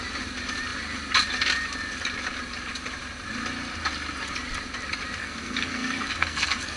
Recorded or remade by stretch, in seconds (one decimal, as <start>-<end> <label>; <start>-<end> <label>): 0.0-5.2 recorded; 5.2-6.8 remade